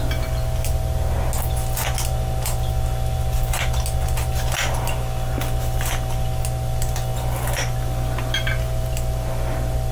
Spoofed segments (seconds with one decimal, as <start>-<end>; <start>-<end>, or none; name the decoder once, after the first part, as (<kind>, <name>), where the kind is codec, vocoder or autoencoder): none